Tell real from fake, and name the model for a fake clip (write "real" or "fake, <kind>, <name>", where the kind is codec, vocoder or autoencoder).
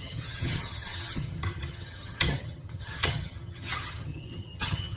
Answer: fake, vocoder, HiFi-GAN